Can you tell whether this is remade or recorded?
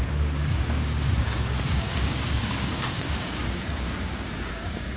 remade